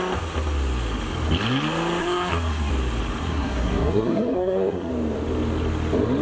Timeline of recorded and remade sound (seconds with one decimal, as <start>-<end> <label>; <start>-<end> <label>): 0.0-2.0 recorded; 2.0-2.7 remade; 2.7-3.2 recorded; 3.2-4.9 remade; 4.9-6.2 recorded